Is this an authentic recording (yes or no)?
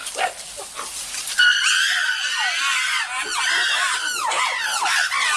yes